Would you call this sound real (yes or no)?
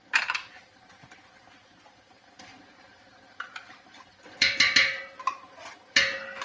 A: no